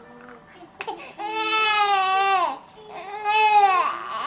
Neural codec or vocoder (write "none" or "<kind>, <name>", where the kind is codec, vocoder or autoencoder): none